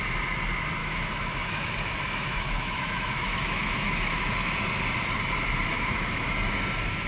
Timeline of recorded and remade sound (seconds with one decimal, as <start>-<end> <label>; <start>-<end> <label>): 0.0-0.8 recorded; 0.8-4.2 remade; 4.2-5.7 recorded; 5.7-6.3 remade; 6.3-7.1 recorded